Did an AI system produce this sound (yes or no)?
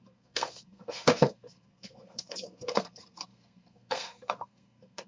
yes